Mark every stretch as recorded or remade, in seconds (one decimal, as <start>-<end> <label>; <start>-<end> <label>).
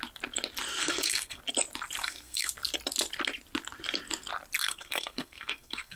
0.0-0.8 recorded; 0.8-1.4 remade; 1.4-2.0 recorded; 2.0-2.5 remade; 2.5-4.6 recorded; 4.6-6.0 remade